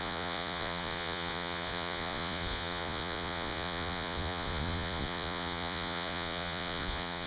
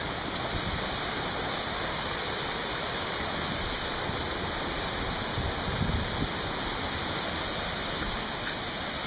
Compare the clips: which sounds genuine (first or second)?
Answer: second